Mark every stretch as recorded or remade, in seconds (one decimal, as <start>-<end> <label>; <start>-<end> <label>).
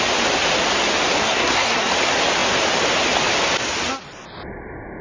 0.0-1.2 recorded; 1.2-1.9 remade; 1.9-5.0 recorded